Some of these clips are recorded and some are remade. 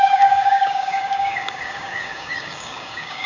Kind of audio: remade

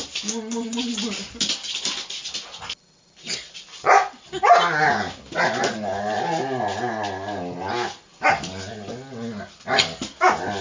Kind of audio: recorded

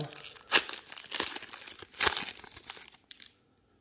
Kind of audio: recorded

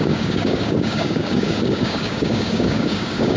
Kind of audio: remade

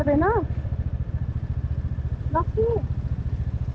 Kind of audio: recorded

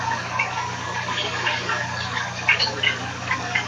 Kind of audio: remade